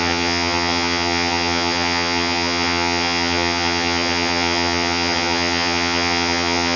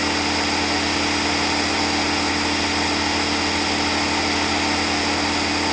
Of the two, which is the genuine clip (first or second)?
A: second